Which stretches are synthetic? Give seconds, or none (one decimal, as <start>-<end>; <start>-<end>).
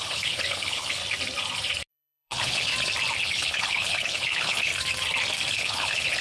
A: 0.0-1.0; 1.9-2.7; 3.2-4.7; 5.5-6.2